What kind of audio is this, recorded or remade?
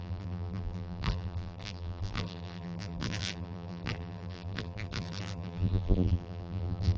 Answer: remade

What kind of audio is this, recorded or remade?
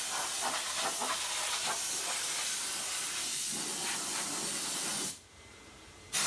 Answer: recorded